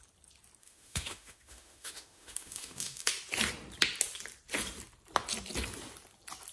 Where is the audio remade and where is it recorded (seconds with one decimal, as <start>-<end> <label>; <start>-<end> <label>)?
0.0-0.6 recorded; 0.6-3.1 remade; 3.1-6.5 recorded